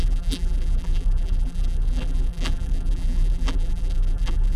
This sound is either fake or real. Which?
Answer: fake